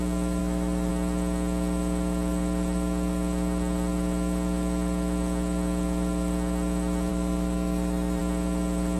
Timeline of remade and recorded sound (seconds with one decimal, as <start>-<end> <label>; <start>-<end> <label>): 0.0-0.4 recorded; 0.4-0.9 remade; 0.9-7.1 recorded; 7.1-8.2 remade; 8.2-9.0 recorded